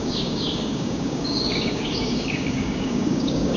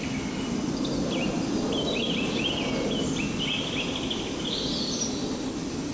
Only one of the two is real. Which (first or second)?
second